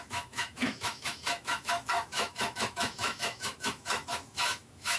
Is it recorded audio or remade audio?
remade